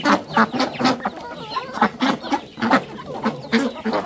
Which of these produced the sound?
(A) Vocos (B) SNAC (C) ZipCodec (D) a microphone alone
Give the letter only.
D